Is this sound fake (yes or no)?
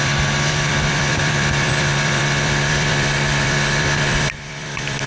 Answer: yes